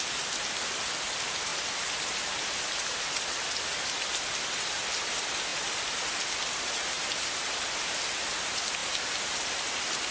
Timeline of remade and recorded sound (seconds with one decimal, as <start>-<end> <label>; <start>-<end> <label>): 0.0-10.1 recorded